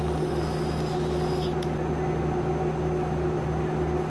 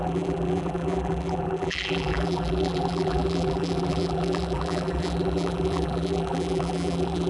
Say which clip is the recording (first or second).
first